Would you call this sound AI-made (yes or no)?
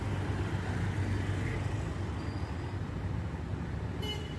no